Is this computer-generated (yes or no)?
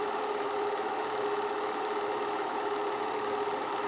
yes